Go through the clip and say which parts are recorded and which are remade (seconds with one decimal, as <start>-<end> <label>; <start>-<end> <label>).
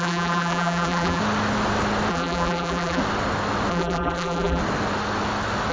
0.0-1.2 remade; 1.2-2.1 recorded; 2.1-3.0 remade; 3.0-3.7 recorded; 3.7-4.6 remade; 4.6-5.7 recorded